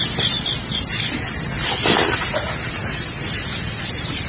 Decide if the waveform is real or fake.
real